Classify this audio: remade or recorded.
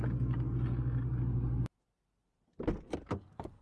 recorded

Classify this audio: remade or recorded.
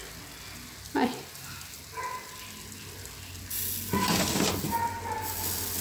recorded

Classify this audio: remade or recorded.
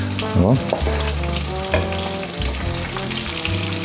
recorded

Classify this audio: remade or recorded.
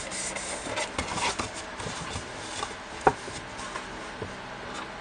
recorded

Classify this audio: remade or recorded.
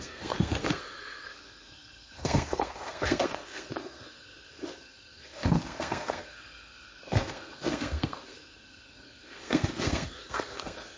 remade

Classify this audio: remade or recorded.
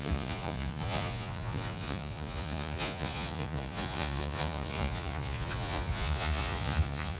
remade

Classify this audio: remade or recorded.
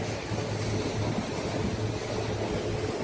recorded